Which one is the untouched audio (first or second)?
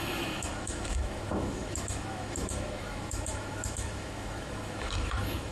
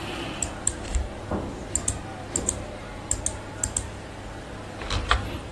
second